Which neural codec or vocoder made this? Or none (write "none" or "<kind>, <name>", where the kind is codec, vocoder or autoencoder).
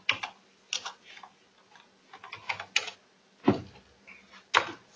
none